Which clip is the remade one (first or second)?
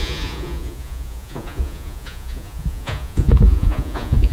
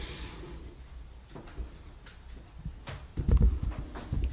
first